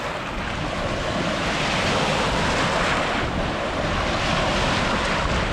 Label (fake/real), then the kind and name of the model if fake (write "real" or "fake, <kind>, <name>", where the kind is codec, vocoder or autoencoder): real